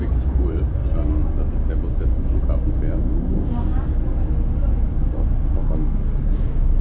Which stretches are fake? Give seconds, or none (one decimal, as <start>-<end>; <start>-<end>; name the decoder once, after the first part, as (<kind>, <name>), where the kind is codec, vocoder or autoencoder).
0.0-0.8 (vocoder, BigVGAN v2); 4.7-5.6; 6.2-6.8